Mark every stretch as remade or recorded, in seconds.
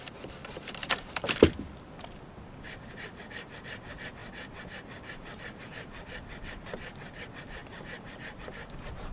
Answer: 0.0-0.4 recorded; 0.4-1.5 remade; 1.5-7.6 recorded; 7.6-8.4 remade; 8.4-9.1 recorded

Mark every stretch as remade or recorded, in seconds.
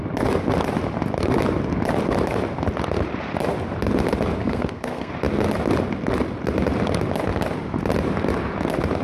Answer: 0.0-4.4 recorded; 4.4-5.1 remade; 5.1-9.0 recorded